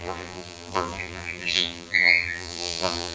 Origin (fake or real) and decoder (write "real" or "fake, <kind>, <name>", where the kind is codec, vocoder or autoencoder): fake, vocoder, BigVGAN v2